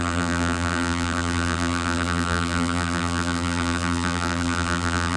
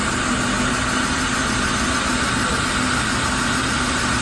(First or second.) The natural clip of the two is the second